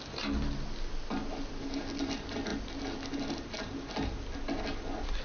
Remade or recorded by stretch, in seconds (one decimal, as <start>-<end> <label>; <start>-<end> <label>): 0.0-5.2 recorded